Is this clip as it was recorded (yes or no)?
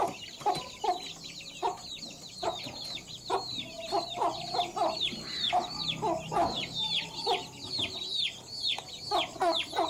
yes